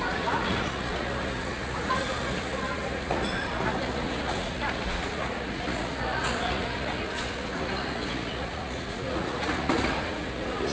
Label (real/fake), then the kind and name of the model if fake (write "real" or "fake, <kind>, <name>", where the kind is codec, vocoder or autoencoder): fake, vocoder, Vocos